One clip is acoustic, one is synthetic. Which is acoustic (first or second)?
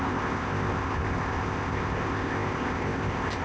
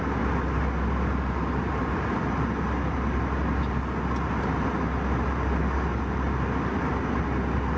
second